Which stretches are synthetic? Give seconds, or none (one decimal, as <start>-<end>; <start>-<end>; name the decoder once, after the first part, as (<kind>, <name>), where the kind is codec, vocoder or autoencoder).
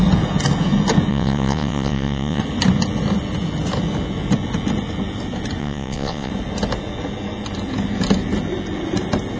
1.1-2.4 (vocoder, WaveNeXt); 5.6-6.3